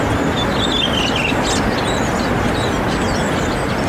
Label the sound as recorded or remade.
recorded